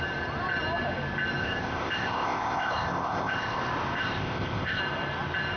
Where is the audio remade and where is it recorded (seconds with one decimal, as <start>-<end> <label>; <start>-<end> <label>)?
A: 0.0-1.4 recorded; 1.4-3.6 remade; 3.6-4.0 recorded; 4.0-4.8 remade; 4.8-5.6 recorded